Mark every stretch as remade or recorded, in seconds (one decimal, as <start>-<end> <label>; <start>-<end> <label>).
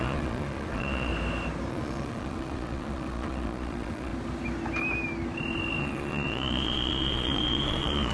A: 0.0-1.1 remade; 1.1-1.7 recorded; 1.7-4.1 remade; 4.1-5.8 recorded; 5.8-8.1 remade